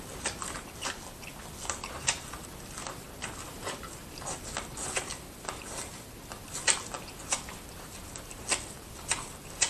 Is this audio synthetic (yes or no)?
no